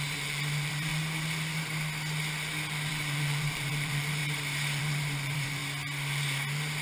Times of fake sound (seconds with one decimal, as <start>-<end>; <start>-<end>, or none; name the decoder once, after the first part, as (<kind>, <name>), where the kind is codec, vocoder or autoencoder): 0.0-0.9 (vocoder, BigVGAN v2); 2.9-4.2; 4.8-5.6